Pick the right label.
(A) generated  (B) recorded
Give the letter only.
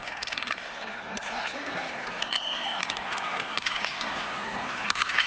A